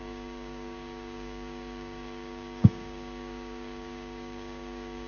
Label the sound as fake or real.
fake